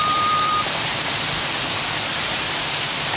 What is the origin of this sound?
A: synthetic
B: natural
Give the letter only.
A